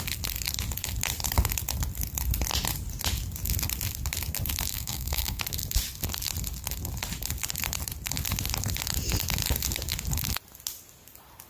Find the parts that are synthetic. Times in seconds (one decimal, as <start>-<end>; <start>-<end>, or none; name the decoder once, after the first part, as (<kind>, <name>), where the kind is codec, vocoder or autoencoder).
4.7-5.4 (codec, SNAC)